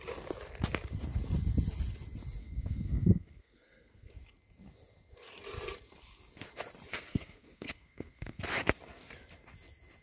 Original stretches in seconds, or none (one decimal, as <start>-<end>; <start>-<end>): 0.0-2.4; 4.1-6.9; 8.4-10.0